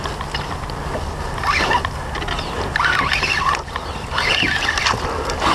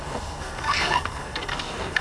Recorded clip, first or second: first